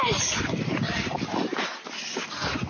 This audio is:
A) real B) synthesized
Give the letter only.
A